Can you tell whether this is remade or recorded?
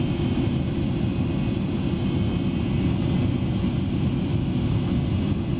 recorded